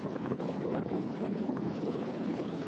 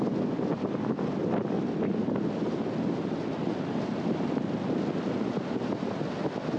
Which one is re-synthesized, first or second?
first